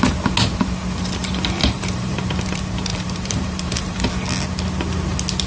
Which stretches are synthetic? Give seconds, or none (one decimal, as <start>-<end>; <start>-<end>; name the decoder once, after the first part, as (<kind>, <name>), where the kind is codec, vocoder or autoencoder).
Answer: 1.6-2.2 (vocoder, BigVGAN v2); 2.9-4.1